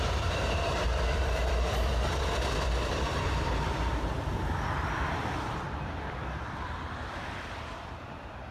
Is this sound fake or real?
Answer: fake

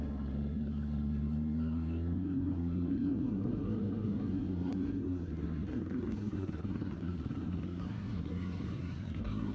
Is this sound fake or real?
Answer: fake